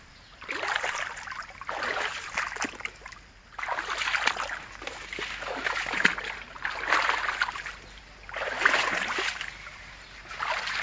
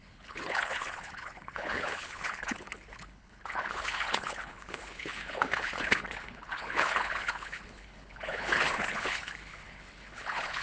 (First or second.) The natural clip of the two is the first